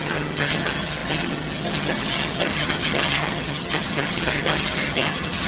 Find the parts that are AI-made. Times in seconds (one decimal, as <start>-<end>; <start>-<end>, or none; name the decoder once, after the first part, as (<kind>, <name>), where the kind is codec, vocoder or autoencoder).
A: 0.0-5.5 (vocoder, HiFi-GAN)